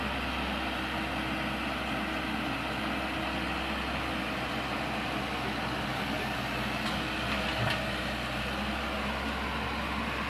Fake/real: real